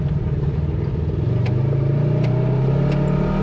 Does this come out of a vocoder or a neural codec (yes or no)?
no